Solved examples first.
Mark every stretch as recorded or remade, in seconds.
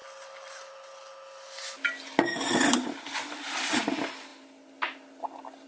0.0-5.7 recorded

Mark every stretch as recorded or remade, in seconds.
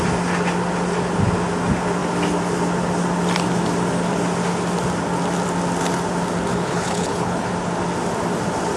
0.0-6.5 recorded; 6.5-7.5 remade; 7.5-8.8 recorded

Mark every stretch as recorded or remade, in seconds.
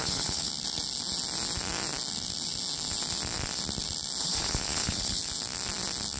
0.0-0.5 remade; 0.5-4.2 recorded; 4.2-5.2 remade; 5.2-6.2 recorded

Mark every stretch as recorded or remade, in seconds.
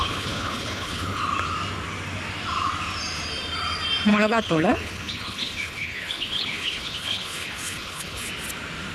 0.0-1.2 remade; 1.2-4.1 recorded; 4.1-8.3 remade; 8.3-8.9 recorded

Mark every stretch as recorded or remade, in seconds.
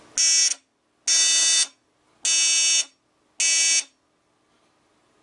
0.0-5.2 recorded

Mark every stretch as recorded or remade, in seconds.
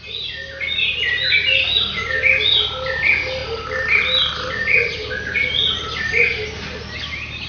0.0-7.5 recorded